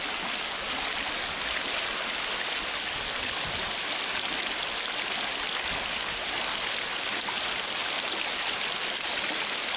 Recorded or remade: recorded